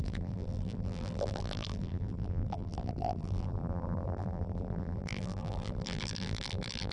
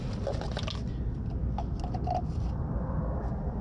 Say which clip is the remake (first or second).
first